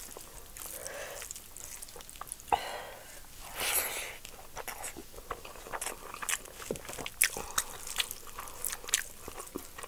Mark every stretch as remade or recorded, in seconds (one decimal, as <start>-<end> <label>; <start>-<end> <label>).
0.0-9.9 recorded